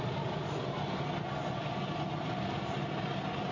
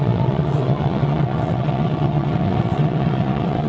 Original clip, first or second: first